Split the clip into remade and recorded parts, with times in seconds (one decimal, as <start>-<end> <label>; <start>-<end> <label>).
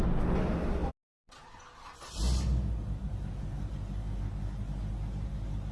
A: 0.0-5.7 recorded